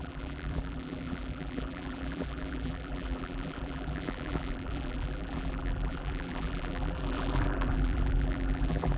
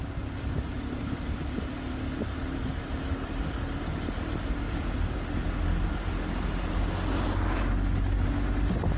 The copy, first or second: first